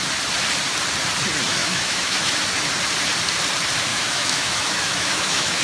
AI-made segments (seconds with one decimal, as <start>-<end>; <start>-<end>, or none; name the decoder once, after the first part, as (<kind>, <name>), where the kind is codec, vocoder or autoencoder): 1.6-2.3 (autoencoder, DAC-VAE); 3.9-5.6